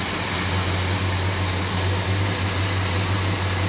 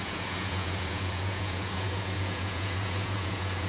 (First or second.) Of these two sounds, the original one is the first